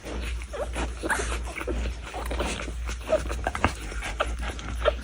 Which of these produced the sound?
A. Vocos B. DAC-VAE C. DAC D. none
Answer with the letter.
D